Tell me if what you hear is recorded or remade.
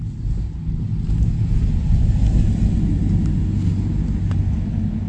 recorded